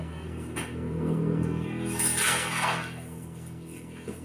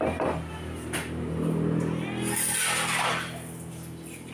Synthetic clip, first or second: first